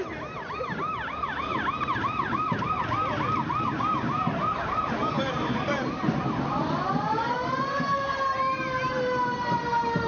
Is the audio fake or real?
fake